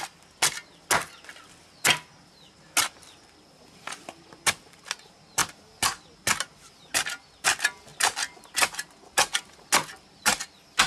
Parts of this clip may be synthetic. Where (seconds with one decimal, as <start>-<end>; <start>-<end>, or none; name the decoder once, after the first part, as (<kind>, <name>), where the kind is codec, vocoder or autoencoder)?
none